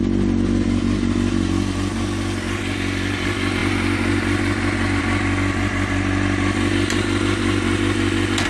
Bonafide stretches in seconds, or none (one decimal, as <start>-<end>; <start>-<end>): 0.0-8.5